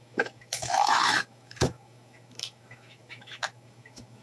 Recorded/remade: remade